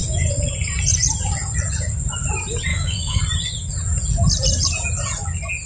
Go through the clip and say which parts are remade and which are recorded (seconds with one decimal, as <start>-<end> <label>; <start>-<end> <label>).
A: 0.0-2.7 recorded; 2.7-3.2 remade; 3.2-5.7 recorded